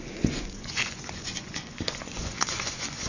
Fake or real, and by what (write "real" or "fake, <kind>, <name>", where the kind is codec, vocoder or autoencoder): fake, vocoder, Vocos